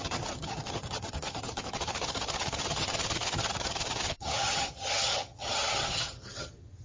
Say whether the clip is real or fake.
fake